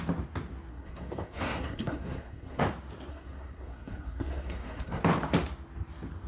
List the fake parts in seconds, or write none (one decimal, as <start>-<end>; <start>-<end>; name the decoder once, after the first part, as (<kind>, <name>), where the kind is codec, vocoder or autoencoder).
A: 0.7-2.6 (codec, SNAC); 3.1-5.0

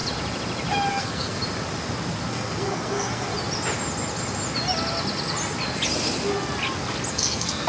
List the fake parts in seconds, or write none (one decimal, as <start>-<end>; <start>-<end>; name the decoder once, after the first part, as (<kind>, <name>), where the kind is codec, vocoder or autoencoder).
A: 0.9-1.4 (codec, SNAC); 2.3-3.3; 7.1-7.7